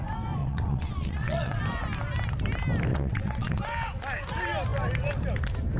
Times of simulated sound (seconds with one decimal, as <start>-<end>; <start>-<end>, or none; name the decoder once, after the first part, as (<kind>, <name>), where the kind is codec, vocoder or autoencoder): 0.4-1.6 (vocoder, WaveNeXt); 2.9-3.6